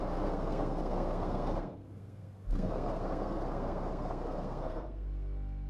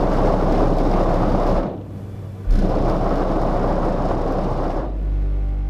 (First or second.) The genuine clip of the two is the second